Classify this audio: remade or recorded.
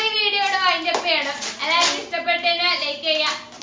recorded